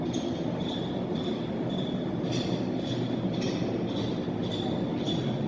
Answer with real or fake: real